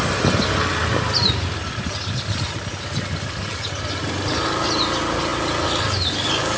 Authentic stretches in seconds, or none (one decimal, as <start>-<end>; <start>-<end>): 0.0-6.6